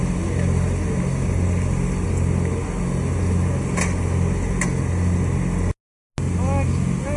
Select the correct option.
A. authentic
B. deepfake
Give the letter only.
A